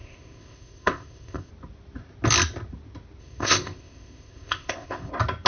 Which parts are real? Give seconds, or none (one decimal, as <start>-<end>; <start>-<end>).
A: 1.5-3.2; 5.1-5.5